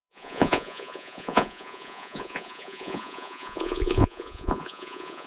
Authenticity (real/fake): fake